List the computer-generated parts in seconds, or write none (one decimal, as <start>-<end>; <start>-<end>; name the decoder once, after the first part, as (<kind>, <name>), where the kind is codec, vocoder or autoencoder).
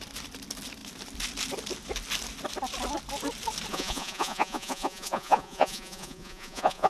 3.7-6.9 (vocoder, Vocos)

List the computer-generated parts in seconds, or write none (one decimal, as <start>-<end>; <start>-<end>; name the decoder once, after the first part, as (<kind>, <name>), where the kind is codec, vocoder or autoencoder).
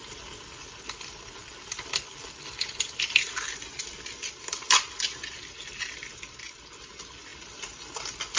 none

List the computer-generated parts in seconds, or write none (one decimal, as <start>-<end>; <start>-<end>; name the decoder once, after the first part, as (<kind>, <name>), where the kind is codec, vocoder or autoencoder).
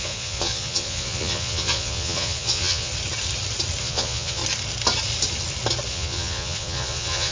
0.0-2.9 (vocoder, Vocos); 3.8-4.4; 5.9-7.3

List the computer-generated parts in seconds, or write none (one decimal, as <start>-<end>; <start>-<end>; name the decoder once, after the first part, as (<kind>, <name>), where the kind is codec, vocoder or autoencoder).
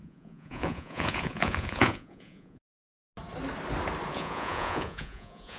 0.0-2.8 (vocoder, Vocos); 4.1-5.6